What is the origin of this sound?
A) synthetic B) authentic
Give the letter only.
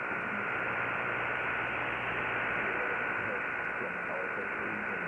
B